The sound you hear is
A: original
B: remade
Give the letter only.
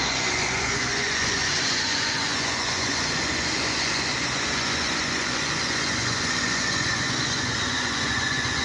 B